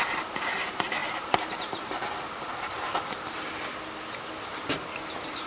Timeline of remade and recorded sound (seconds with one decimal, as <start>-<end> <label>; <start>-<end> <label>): 0.0-3.5 remade; 3.5-4.4 recorded; 4.4-5.5 remade